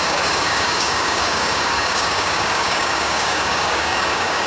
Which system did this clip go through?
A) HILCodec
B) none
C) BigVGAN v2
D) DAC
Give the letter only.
D